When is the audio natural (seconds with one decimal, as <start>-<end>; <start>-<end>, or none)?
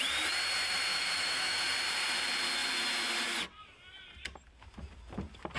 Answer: 0.0-0.9; 1.7-5.6